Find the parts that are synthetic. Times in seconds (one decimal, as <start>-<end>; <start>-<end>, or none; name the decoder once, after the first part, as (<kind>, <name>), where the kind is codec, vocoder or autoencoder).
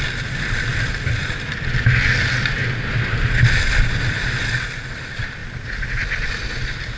none